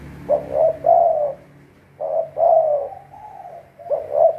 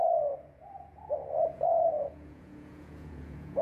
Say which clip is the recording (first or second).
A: first